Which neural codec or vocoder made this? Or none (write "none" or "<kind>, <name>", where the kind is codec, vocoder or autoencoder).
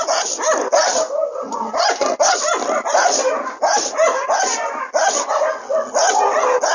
none